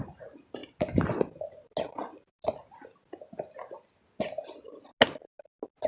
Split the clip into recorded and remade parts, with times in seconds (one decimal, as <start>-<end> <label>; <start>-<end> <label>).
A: 0.0-5.9 recorded